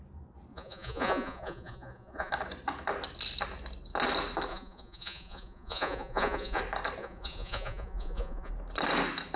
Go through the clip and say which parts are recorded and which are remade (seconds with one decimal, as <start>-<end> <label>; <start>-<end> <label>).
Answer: 0.0-0.5 recorded; 0.5-2.3 remade; 2.3-4.5 recorded; 4.5-6.6 remade; 6.6-7.0 recorded; 7.0-8.5 remade; 8.5-9.4 recorded